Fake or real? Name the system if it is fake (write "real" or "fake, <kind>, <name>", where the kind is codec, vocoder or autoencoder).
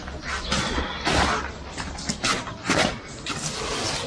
real